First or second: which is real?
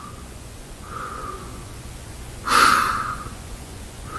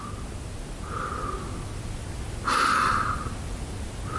second